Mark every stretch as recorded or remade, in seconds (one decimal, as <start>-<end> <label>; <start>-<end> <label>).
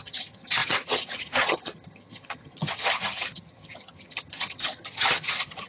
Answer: 0.0-5.7 remade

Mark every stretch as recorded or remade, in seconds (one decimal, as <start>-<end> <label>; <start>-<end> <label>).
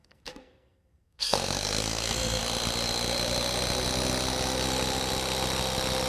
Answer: 0.0-2.4 remade; 2.4-6.1 recorded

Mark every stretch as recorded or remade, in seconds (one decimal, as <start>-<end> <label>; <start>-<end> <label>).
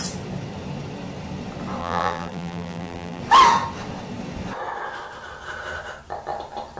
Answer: 0.0-1.8 recorded; 1.8-3.2 remade; 3.2-6.8 recorded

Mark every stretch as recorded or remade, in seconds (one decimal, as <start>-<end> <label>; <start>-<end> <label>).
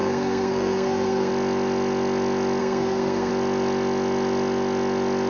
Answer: 0.0-1.3 remade; 1.3-2.6 recorded; 2.6-3.3 remade; 3.3-5.3 recorded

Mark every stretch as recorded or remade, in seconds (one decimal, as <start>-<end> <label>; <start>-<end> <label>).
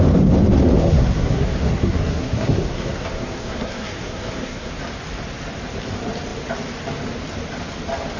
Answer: 0.0-0.8 recorded; 0.8-4.7 remade; 4.7-8.2 recorded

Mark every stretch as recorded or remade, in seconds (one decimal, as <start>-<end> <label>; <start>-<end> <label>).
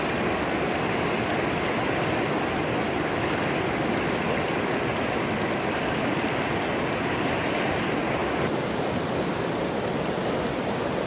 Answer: 0.0-11.1 recorded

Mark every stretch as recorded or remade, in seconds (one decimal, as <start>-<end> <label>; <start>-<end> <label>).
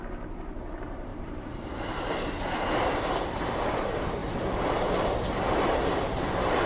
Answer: 0.0-6.7 remade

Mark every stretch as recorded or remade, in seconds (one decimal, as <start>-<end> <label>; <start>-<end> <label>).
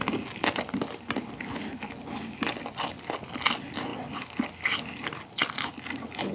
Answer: 0.0-6.3 recorded